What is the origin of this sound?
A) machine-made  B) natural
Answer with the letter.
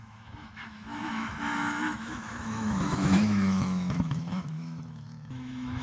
A